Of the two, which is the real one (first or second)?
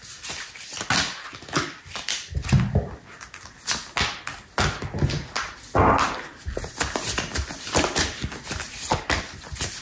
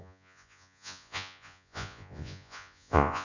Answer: first